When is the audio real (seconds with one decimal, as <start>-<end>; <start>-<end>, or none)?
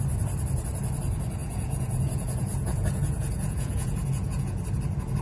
0.0-1.4; 4.5-5.2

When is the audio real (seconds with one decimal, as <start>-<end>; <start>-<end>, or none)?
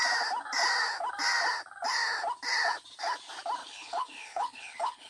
0.0-3.6